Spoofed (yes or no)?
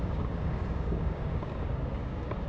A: yes